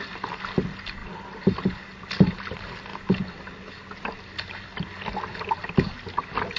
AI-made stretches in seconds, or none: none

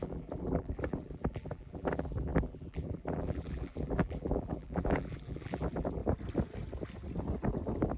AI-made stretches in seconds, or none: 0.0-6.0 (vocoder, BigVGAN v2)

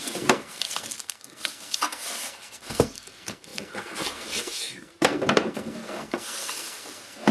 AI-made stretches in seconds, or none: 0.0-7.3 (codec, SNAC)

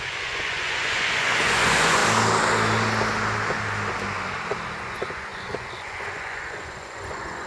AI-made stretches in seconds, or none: 0.0-2.0 (vocoder, Vocos); 4.8-7.5

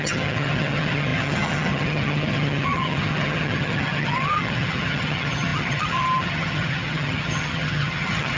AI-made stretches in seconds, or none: 0.0-8.4 (vocoder, HiFi-GAN)

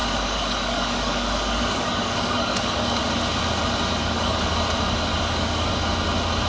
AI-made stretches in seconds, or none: 0.0-3.1 (codec, DAC); 4.0-4.6; 5.1-5.7

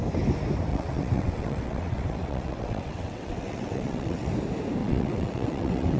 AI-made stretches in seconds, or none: 0.7-4.3 (vocoder, WaveNeXt); 4.8-6.0